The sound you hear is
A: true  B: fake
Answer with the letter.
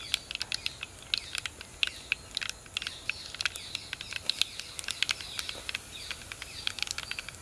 A